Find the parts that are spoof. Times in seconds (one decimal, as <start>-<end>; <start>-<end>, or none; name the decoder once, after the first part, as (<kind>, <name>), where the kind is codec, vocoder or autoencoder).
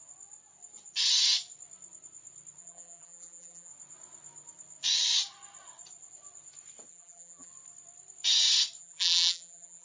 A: 2.6-3.7 (vocoder, BigVGAN v2); 6.9-7.5; 8.8-9.8